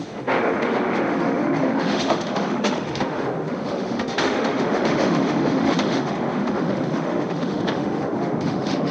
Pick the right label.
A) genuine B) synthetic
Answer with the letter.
B